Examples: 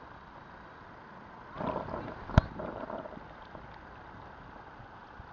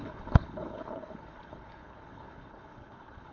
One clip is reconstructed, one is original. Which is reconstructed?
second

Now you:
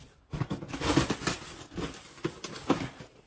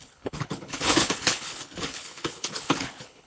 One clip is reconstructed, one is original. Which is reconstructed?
second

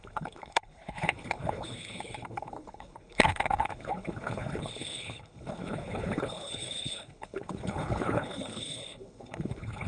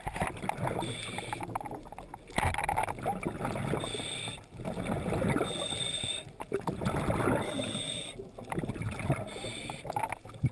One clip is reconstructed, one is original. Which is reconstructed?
first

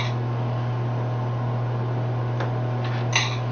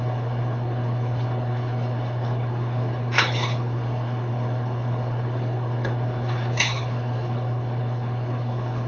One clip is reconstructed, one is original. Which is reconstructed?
second